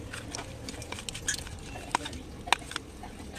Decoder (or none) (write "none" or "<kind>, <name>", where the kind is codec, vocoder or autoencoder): none